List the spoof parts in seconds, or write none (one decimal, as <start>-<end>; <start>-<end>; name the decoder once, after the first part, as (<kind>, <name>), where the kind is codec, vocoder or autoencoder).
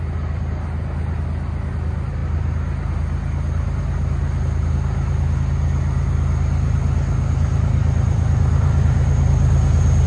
none